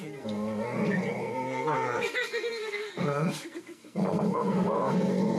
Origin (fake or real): fake